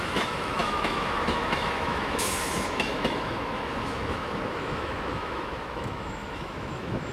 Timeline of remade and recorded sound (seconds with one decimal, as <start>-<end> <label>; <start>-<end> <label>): 0.0-7.1 remade